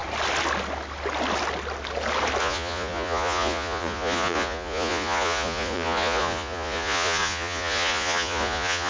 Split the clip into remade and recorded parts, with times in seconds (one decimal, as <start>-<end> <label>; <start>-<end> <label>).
0.0-2.4 recorded; 2.4-8.9 remade